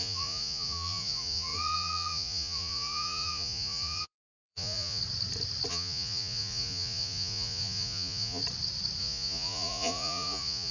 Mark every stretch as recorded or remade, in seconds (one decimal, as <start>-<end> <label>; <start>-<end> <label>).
0.0-5.0 remade; 5.0-5.7 recorded; 5.7-8.4 remade; 8.4-9.0 recorded; 9.0-10.7 remade